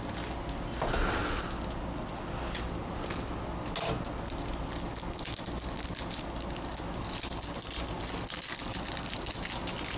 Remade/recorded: recorded